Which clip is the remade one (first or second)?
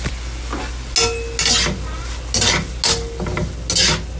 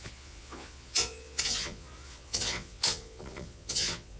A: second